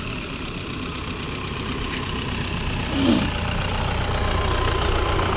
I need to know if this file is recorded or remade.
recorded